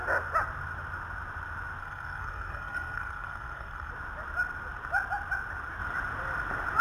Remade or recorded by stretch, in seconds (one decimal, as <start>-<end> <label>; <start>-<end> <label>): 0.0-1.8 recorded; 1.8-3.9 remade; 3.9-6.8 recorded